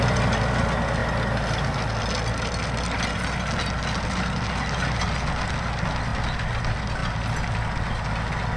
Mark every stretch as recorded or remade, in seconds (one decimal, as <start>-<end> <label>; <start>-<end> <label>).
0.0-8.6 recorded